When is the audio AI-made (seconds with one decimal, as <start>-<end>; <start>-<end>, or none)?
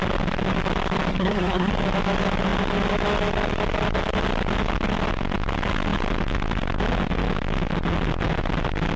1.1-1.7